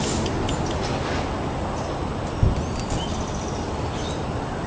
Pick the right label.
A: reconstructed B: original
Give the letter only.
B